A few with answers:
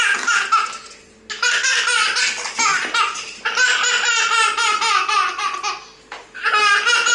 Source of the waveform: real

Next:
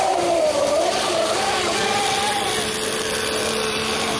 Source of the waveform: real